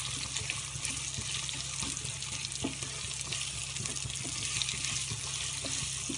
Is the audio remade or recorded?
recorded